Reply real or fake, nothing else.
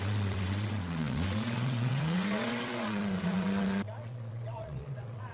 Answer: fake